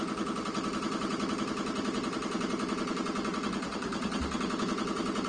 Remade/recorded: recorded